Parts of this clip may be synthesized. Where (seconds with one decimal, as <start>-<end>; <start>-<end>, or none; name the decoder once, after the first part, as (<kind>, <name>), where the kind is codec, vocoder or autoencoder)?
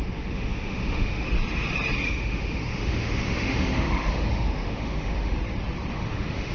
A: 0.0-1.3 (autoencoder, DAC-VAE); 2.1-5.3; 5.9-6.5